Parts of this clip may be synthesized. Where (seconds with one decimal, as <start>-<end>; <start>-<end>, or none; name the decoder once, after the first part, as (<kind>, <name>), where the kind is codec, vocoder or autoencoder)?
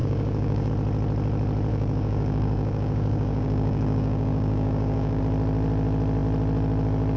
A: 0.0-0.7 (codec, DAC); 1.7-5.2